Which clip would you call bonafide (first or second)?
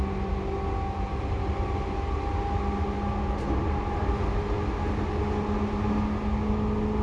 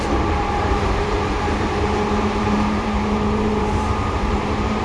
first